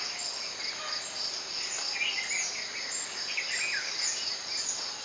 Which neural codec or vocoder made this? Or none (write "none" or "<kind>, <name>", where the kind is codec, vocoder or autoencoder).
none